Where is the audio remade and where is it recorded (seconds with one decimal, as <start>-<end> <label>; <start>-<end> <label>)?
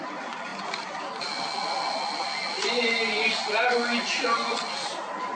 0.0-5.3 recorded